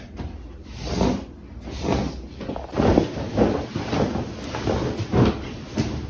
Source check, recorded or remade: recorded